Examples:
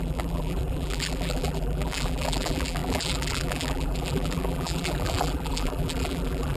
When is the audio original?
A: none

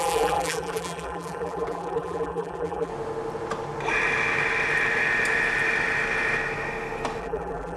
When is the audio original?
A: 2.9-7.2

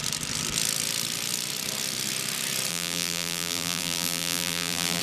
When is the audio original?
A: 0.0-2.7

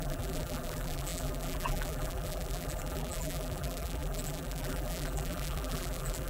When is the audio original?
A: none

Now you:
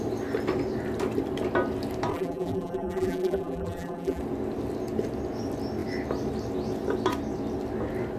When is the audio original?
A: 0.0-2.1; 4.2-8.2